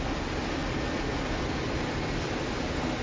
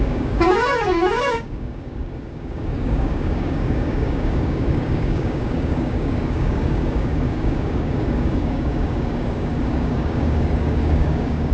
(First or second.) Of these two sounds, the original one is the first